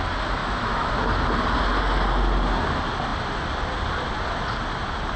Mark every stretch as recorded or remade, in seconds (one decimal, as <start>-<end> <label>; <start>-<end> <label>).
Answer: 0.0-0.4 recorded; 0.4-0.9 remade; 0.9-5.2 recorded